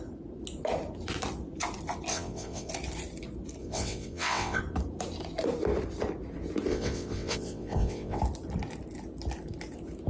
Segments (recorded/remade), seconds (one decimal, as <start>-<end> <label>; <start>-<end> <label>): 0.0-2.1 recorded; 2.1-2.7 remade; 2.7-3.6 recorded; 3.6-4.6 remade; 4.6-6.7 recorded; 6.7-8.2 remade; 8.2-10.1 recorded